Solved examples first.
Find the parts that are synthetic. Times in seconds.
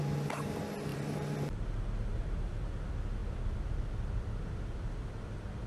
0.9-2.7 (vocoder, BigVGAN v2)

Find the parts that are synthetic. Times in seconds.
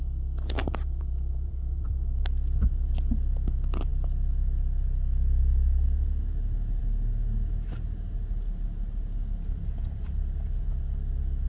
0.6-1.9 (vocoder, BigVGAN v2)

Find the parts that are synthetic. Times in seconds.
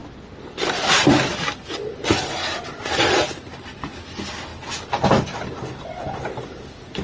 0.0-4.5 (vocoder, BigVGAN v2); 5.6-7.0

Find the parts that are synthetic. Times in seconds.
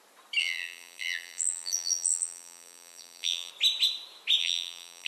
0.4-3.5 (vocoder, BigVGAN v2); 4.4-5.1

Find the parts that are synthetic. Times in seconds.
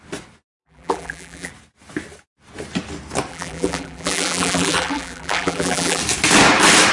0.6-1.5 (vocoder, BigVGAN v2); 3.3-6.0